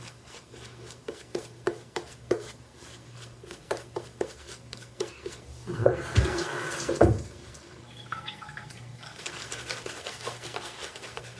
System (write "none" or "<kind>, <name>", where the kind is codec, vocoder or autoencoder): codec, SNAC